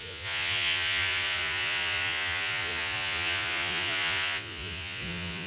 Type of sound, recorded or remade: remade